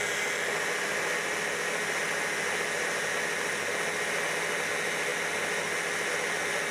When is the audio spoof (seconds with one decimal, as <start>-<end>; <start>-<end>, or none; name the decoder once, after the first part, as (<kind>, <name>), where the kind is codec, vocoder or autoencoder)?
none

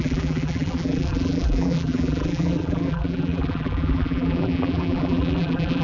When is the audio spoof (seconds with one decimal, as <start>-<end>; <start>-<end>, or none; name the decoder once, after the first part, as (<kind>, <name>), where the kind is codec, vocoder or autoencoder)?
0.0-5.8 (vocoder, BigVGAN v2)

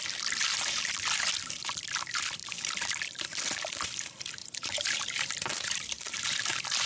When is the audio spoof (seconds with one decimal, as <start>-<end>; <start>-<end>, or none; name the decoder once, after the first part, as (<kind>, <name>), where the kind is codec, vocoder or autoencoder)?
4.4-6.9 (vocoder, BigVGAN v2)

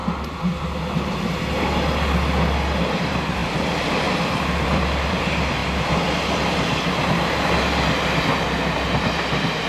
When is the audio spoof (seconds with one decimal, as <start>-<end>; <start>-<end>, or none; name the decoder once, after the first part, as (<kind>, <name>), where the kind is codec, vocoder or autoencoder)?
3.0-5.6 (vocoder, BigVGAN v2); 8.9-9.7

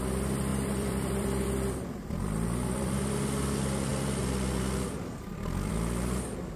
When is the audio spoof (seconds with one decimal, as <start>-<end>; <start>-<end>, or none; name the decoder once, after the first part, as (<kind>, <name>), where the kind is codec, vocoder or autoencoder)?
0.5-3.0 (vocoder, BigVGAN v2)

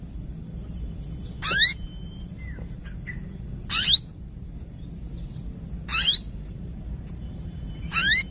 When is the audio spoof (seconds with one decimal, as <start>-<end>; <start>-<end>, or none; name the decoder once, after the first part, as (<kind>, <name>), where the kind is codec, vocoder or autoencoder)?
5.9-7.9 (vocoder, BigVGAN v2)

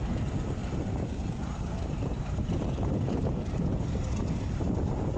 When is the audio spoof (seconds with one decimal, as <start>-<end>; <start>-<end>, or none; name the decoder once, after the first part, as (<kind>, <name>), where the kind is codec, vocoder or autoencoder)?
0.6-3.7 (vocoder, BigVGAN v2)